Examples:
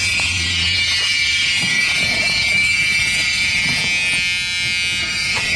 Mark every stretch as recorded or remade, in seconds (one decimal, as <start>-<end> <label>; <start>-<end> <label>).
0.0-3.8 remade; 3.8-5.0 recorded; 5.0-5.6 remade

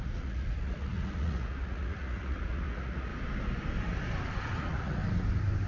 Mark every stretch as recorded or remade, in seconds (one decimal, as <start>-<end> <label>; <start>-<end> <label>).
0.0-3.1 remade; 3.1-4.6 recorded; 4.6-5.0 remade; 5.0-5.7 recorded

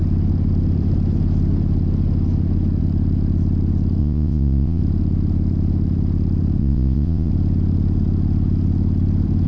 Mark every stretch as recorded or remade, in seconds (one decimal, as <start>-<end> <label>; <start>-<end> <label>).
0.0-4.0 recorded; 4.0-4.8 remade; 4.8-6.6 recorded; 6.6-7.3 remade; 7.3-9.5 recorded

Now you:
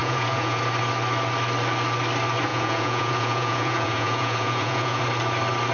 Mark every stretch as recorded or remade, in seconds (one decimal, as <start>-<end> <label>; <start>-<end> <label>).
0.0-0.6 remade; 0.6-2.5 recorded; 2.5-5.0 remade; 5.0-5.7 recorded

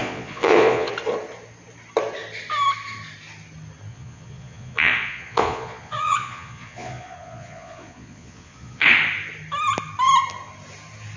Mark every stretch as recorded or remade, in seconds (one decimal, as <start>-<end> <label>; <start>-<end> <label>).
0.0-0.9 remade; 0.9-3.9 recorded; 3.9-8.9 remade; 8.9-11.2 recorded